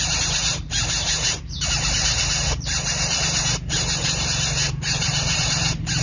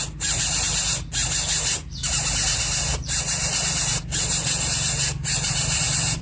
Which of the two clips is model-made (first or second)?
first